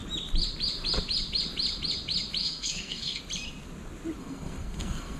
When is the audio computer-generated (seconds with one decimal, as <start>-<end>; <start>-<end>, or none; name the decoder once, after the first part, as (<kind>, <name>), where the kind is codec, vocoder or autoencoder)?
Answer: 2.4-3.2 (codec, SNAC); 4.2-5.2